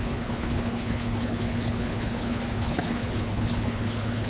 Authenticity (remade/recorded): remade